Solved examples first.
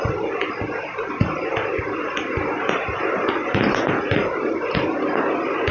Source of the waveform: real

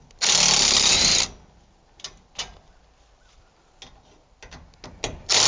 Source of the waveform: real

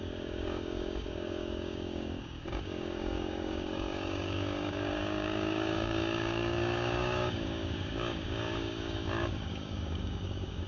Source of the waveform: fake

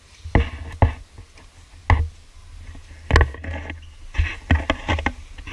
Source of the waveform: real